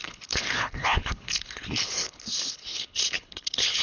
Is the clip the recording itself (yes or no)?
no